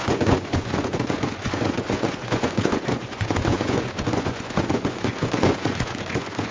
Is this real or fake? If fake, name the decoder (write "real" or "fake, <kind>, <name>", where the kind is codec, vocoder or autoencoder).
fake, vocoder, Vocos